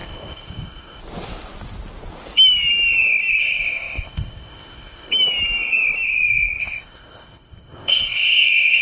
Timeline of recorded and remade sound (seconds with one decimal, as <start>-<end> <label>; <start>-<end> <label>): 0.0-1.0 remade; 1.0-3.4 recorded; 3.4-5.1 remade; 5.1-6.6 recorded; 6.6-8.8 remade